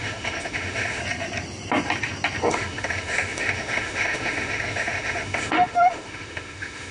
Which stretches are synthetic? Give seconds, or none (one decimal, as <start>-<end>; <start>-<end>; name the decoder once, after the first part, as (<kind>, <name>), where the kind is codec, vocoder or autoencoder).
0.0-1.0 (autoencoder, DAC-VAE); 2.5-6.9